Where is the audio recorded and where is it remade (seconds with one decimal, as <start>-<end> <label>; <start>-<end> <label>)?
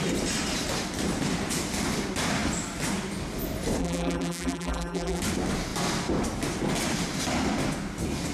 0.0-3.8 recorded; 3.8-5.2 remade; 5.2-8.3 recorded